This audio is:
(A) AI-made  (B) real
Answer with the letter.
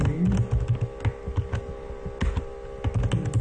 B